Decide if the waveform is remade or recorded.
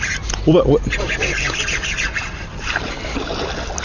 recorded